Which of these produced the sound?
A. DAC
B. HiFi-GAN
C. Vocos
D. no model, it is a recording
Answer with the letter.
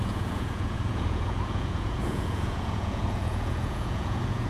C